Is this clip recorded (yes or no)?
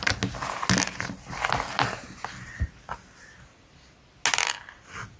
yes